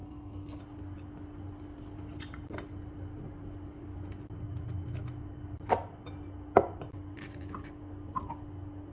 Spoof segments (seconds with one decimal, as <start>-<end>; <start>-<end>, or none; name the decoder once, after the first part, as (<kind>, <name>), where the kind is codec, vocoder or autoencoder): 0.0-0.6 (codec, SNAC)